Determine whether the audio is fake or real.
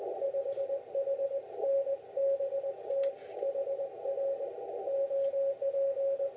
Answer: real